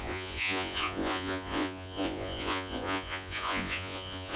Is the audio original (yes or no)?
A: no